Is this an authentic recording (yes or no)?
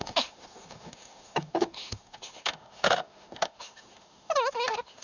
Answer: no